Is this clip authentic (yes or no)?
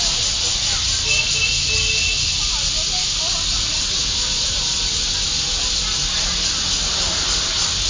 yes